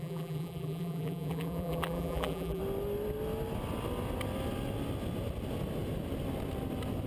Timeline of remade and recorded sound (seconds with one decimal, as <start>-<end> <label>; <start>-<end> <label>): 0.0-2.6 remade; 2.6-7.1 recorded